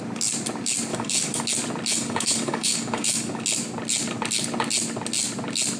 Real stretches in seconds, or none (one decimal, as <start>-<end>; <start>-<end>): 0.0-0.9; 1.4-1.9; 3.4-5.8